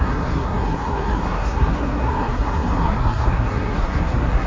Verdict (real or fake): fake